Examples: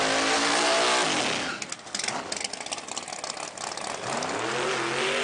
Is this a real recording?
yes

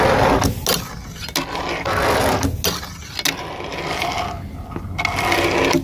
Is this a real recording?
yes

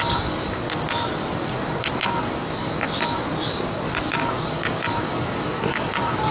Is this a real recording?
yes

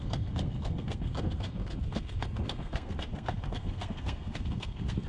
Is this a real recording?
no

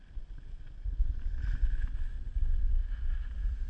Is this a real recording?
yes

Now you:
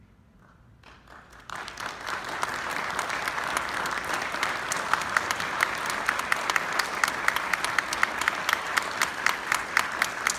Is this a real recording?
yes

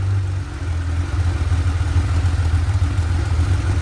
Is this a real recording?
yes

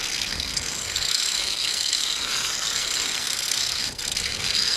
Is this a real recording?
no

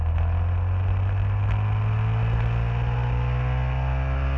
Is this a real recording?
yes